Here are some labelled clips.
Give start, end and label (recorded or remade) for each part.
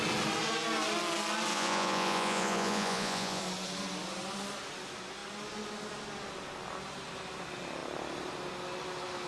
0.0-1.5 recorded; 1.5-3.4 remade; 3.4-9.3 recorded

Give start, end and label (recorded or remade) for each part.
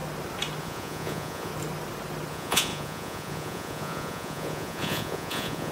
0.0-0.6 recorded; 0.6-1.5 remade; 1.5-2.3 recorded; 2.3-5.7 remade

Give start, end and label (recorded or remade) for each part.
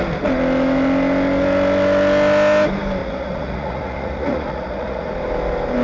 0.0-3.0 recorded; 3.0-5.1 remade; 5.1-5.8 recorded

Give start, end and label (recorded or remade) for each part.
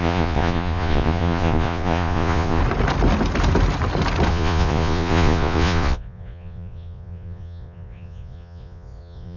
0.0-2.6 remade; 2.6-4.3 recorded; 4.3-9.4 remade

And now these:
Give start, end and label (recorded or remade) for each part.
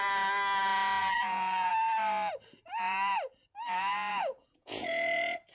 0.0-1.0 recorded; 1.0-1.7 remade; 1.7-4.1 recorded; 4.1-5.5 remade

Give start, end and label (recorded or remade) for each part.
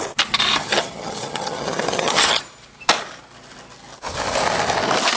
0.0-0.6 recorded; 0.6-2.4 remade; 2.4-5.2 recorded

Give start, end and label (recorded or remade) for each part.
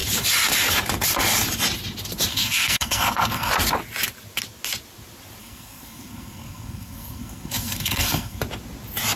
0.0-2.3 recorded; 2.3-3.5 remade; 3.5-5.4 recorded; 5.4-8.4 remade; 8.4-9.2 recorded